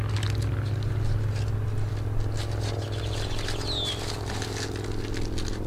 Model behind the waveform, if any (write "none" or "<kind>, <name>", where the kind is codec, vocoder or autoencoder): none